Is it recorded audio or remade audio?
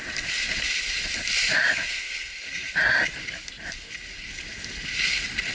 recorded